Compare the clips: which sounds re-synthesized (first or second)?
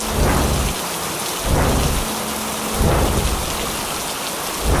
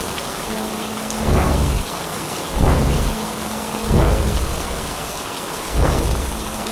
second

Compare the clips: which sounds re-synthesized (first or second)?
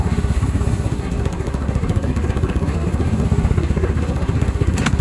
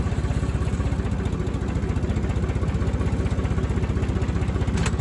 first